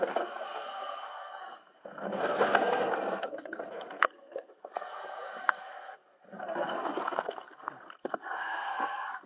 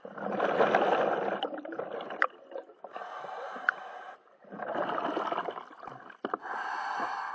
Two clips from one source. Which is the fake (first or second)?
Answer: first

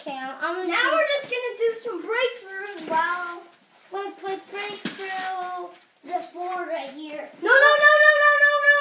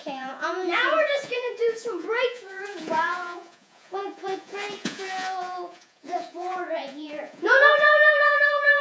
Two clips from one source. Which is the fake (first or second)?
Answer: second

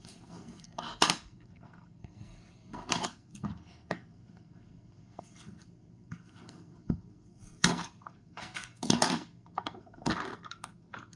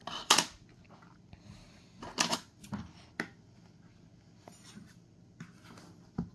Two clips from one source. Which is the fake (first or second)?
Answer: first